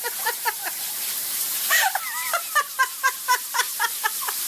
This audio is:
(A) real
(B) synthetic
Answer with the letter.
B